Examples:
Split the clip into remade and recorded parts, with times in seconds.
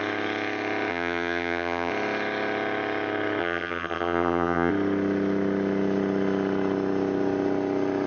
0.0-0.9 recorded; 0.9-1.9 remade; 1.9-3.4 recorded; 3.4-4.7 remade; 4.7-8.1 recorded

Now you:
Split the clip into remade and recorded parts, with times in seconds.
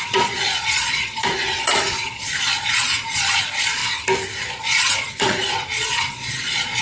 0.0-3.8 remade; 3.8-4.5 recorded; 4.5-6.8 remade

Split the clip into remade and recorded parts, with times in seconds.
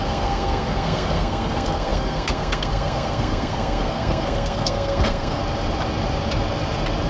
0.0-5.4 remade; 5.4-7.1 recorded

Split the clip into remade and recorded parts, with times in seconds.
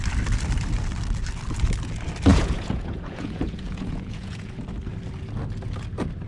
0.0-2.3 recorded; 2.3-4.6 remade; 4.6-6.3 recorded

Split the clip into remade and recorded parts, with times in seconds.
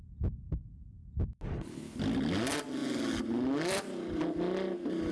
0.0-1.5 recorded; 1.5-2.0 remade; 2.0-5.1 recorded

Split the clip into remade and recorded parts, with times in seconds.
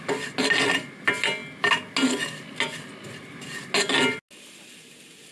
0.0-5.3 recorded